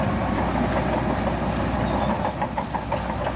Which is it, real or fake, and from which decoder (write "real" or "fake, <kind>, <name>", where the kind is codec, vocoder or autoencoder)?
real